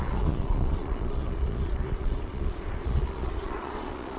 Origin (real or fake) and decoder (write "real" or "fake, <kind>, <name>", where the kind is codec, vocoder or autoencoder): fake, vocoder, Vocos